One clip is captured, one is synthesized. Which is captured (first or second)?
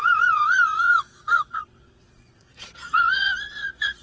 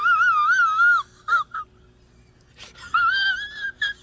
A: second